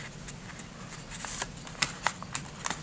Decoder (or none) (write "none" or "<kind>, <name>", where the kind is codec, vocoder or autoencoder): none